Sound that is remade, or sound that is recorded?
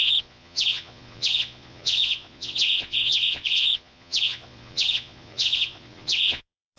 remade